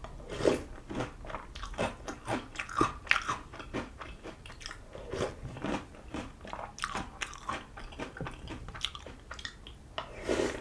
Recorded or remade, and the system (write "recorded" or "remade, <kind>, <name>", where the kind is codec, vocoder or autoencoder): recorded